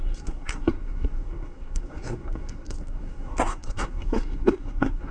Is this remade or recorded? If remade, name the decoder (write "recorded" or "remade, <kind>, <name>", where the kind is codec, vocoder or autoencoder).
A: remade, codec, SNAC